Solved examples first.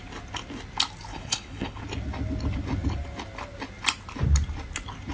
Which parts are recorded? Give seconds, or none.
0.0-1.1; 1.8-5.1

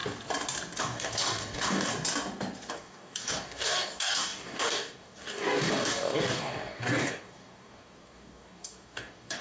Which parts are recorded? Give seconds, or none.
0.0-0.8; 1.9-2.7

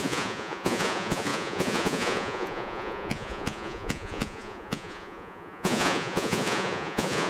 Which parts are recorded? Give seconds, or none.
none